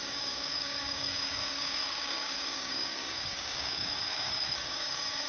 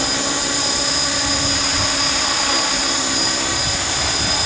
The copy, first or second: first